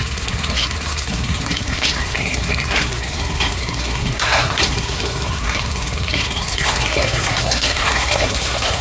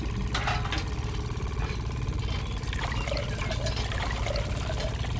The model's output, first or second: first